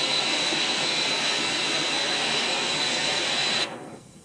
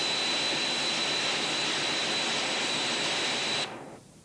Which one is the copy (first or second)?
first